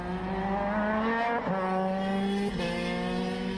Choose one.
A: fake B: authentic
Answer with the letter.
B